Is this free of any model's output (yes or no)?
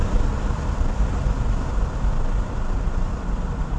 yes